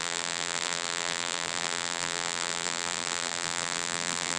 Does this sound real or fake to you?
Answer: fake